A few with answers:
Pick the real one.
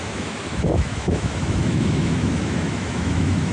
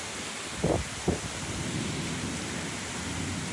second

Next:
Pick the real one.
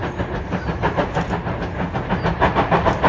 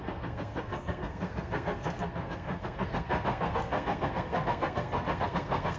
first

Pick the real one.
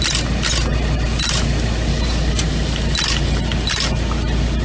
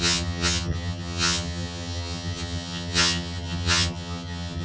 first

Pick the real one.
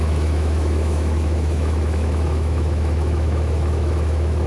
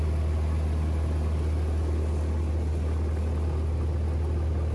second